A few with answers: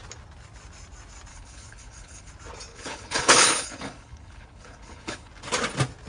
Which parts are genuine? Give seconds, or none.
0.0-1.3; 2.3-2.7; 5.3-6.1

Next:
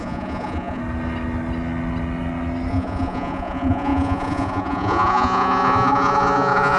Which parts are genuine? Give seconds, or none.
0.8-2.7

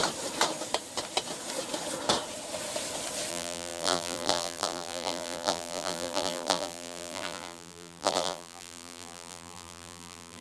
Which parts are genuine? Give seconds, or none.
0.0-3.3

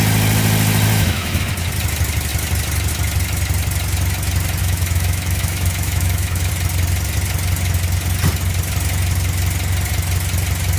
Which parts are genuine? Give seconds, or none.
0.0-0.9; 1.5-4.6; 6.5-10.8

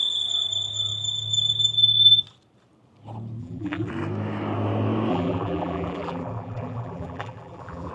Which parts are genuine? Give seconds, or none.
0.0-3.4; 3.9-5.1

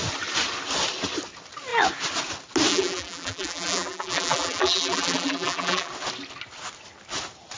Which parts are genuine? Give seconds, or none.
0.0-2.7; 5.9-7.6

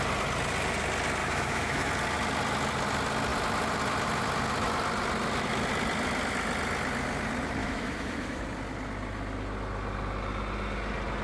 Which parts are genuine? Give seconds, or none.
0.0-1.2; 1.9-7.6; 8.4-11.2